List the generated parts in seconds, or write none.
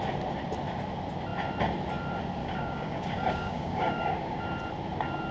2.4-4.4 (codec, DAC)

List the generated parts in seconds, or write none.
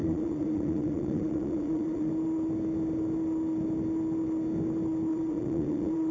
0.0-2.1 (vocoder, Vocos); 5.1-6.1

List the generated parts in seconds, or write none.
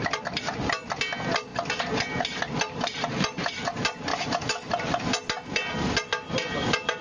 4.1-4.7 (autoencoder, DAC-VAE)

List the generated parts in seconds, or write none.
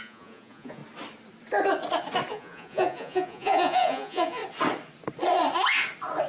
0.0-0.8 (vocoder, Vocos); 2.3-4.4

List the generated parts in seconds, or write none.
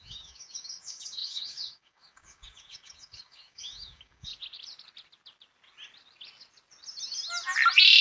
0.0-4.3 (codec, DAC)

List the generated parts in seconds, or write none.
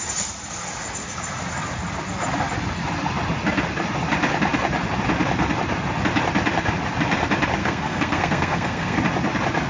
7.6-9.0 (codec, SNAC)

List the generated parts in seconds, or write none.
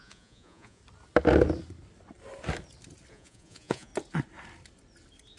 0.0-0.8 (vocoder, Vocos); 3.1-3.9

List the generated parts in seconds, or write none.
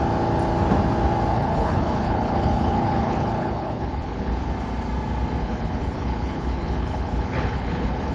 1.3-4.5 (codec, HILCodec); 5.4-8.1